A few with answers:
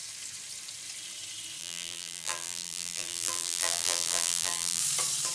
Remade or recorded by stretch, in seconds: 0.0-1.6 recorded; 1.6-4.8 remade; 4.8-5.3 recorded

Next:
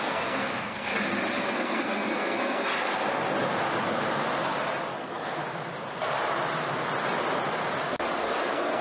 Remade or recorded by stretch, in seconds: 0.0-0.9 remade; 0.9-1.4 recorded; 1.4-2.7 remade; 2.7-4.9 recorded; 4.9-5.4 remade; 5.4-8.4 recorded; 8.4-8.8 remade

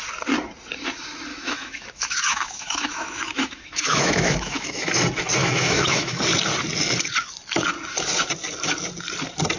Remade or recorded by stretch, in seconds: 0.0-1.3 recorded; 1.3-4.9 remade; 4.9-5.4 recorded; 5.4-6.2 remade; 6.2-9.6 recorded

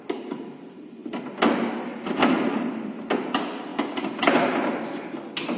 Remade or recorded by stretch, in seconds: 0.0-5.6 recorded

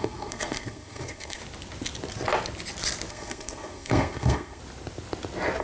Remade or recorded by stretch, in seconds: 0.0-1.4 remade; 1.4-3.1 recorded; 3.1-4.6 remade; 4.6-5.6 recorded

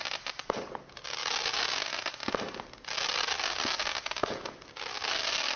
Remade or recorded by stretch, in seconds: 0.0-5.6 recorded